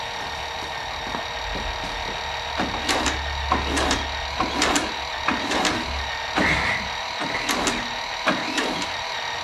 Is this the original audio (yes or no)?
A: yes